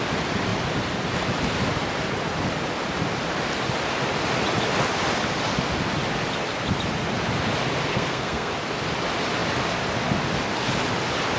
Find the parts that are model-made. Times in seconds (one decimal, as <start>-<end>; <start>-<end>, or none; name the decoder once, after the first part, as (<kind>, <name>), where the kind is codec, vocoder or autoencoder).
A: 7.9-8.5 (codec, SNAC)